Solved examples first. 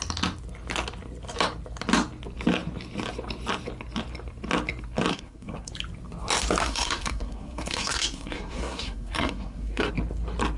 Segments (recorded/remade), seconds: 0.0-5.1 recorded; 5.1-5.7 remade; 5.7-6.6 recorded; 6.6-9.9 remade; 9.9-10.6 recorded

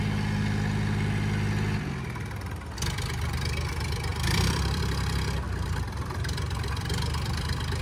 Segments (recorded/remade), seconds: 0.0-4.1 recorded; 4.1-4.8 remade; 4.8-7.8 recorded

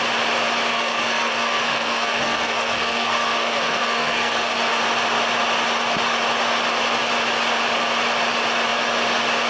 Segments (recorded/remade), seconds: 0.0-0.7 recorded; 0.7-4.8 remade; 4.8-9.5 recorded

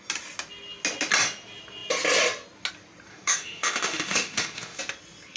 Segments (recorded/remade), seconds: 0.0-3.1 recorded; 3.1-4.8 remade; 4.8-5.4 recorded

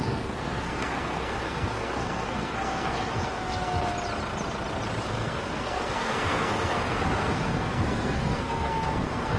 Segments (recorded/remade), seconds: 0.0-3.9 remade; 3.9-5.1 recorded; 5.1-9.4 remade

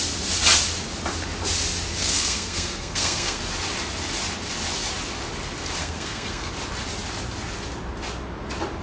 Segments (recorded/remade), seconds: 0.0-2.0 recorded; 2.0-3.4 remade; 3.4-5.8 recorded; 5.8-6.5 remade; 6.5-8.8 recorded